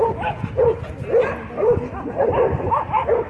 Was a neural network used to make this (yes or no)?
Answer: no